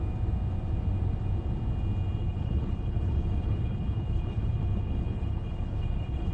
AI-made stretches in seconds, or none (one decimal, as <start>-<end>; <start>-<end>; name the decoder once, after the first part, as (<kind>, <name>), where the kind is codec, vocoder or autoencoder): 2.2-6.3 (codec, HILCodec)